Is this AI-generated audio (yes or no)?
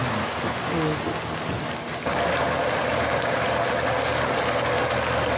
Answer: no